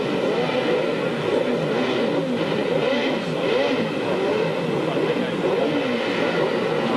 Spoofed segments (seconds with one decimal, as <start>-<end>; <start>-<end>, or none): none

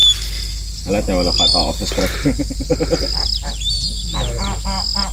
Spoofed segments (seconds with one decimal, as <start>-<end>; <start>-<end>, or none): 2.1-2.7